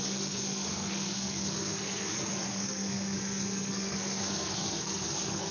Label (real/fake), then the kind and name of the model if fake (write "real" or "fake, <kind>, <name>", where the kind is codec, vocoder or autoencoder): fake, codec, SNAC